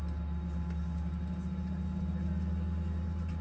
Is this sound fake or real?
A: real